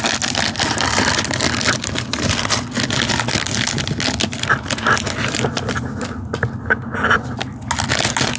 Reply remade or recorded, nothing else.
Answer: recorded